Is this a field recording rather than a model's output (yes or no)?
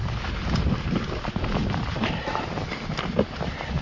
yes